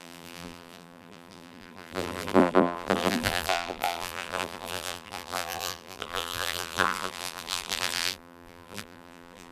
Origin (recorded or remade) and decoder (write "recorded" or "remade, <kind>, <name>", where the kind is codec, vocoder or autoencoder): remade, vocoder, BigVGAN v2